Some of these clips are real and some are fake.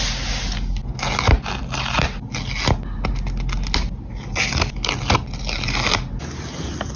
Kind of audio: real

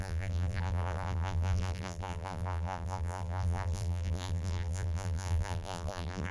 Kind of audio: fake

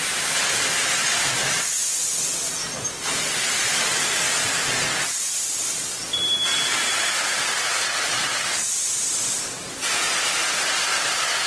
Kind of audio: real